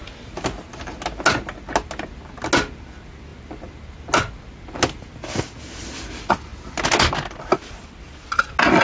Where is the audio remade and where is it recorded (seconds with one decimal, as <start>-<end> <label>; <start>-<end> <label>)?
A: 0.0-8.8 recorded